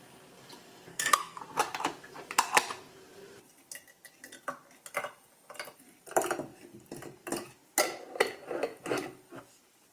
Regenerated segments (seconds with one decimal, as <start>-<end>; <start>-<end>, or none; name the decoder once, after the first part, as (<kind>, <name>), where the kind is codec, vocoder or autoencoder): 0.9-1.4 (codec, SNAC)